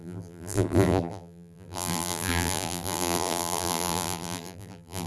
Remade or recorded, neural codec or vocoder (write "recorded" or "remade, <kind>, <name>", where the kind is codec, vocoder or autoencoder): remade, vocoder, BigVGAN v2